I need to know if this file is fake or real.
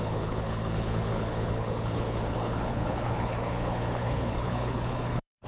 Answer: fake